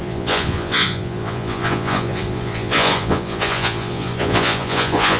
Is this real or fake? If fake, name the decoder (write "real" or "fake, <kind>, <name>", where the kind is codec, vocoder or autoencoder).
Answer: fake, vocoder, Vocos